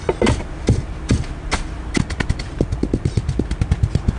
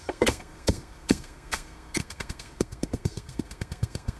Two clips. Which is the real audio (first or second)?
first